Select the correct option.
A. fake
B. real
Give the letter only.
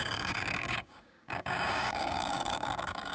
A